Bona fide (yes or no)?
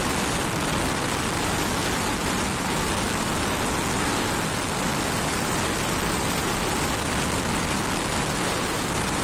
yes